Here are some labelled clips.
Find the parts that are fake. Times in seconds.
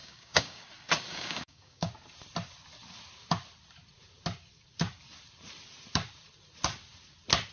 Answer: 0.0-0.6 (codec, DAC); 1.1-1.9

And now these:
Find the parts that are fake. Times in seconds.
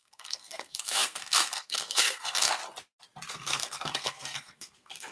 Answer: 0.0-2.6 (codec, SNAC); 3.3-5.1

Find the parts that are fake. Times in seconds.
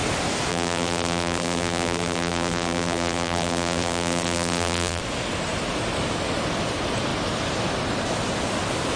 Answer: 0.5-5.0 (vocoder, BigVGAN v2)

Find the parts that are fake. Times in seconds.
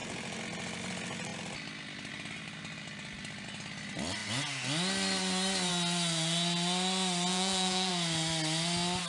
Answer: 7.3-7.9 (vocoder, Vocos)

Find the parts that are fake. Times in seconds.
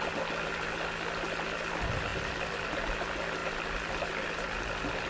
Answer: none